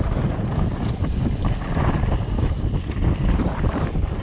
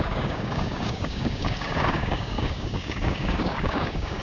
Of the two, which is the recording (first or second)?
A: first